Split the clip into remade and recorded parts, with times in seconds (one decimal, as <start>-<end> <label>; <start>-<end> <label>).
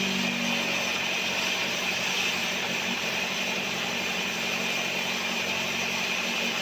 0.0-1.6 recorded; 1.6-4.6 remade; 4.6-6.6 recorded